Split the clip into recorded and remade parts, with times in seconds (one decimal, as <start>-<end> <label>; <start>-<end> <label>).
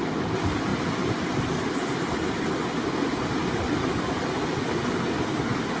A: 0.0-5.8 recorded